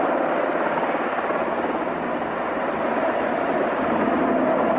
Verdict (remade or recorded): recorded